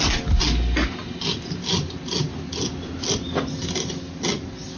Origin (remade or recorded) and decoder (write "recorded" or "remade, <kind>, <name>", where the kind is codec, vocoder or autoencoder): recorded